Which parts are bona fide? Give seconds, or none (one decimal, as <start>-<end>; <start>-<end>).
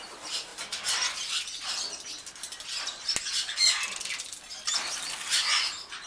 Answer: 0.0-6.1